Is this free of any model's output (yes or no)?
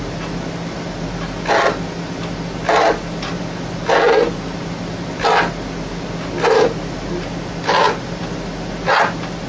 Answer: yes